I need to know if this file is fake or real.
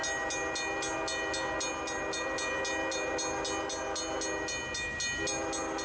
real